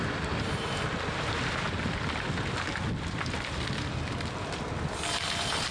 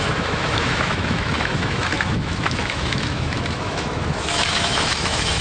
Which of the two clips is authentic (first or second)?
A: first